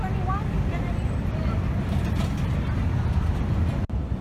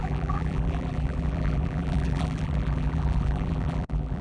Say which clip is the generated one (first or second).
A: second